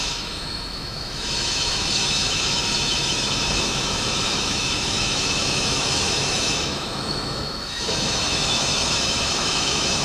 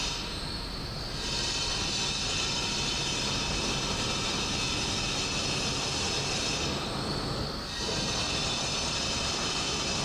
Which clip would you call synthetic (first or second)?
first